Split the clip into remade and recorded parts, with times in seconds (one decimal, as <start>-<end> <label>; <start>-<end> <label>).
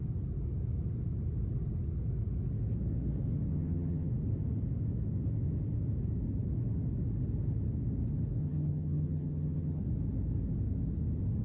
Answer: 0.0-3.5 recorded; 3.5-4.1 remade; 4.1-8.4 recorded; 8.4-9.8 remade; 9.8-11.4 recorded